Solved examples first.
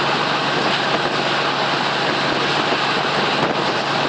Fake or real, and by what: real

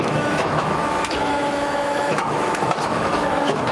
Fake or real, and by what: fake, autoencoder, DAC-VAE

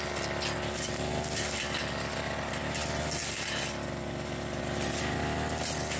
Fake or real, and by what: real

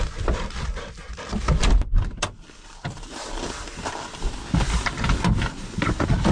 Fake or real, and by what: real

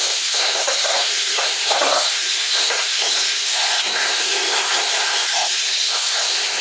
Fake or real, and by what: fake, codec, SNAC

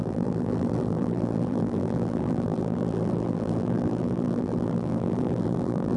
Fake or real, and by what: fake, vocoder, BigVGAN v2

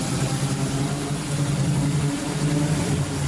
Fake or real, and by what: real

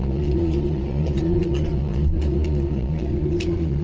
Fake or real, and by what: fake, vocoder, Vocos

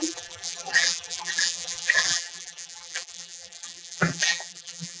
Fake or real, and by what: fake, vocoder, BigVGAN v2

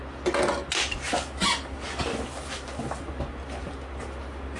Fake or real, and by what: real